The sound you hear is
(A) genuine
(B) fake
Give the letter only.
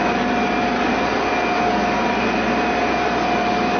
A